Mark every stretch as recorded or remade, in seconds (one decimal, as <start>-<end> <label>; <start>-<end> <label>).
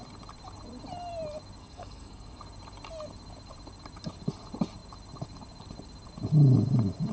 0.0-1.6 recorded; 1.6-2.4 remade; 2.4-7.1 recorded